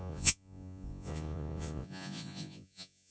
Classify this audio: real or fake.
fake